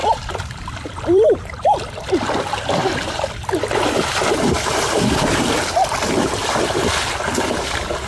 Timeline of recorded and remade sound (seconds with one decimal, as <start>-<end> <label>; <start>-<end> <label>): 0.0-1.8 remade; 1.8-2.8 recorded; 2.8-5.7 remade; 5.7-8.1 recorded